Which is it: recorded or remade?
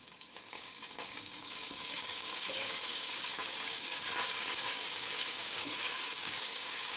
remade